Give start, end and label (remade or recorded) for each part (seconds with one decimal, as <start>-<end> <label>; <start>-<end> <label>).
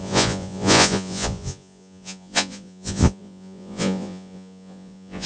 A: 0.0-5.3 remade